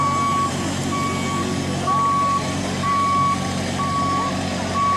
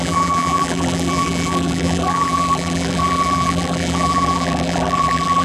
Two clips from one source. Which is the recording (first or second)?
first